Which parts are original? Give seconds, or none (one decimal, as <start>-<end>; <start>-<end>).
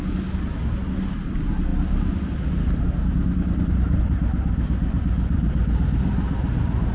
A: 0.0-6.9